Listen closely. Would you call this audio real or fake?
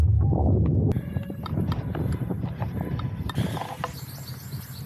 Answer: real